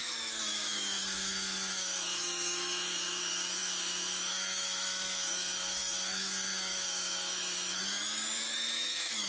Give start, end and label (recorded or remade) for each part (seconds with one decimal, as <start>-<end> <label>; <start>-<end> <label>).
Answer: 0.0-9.3 remade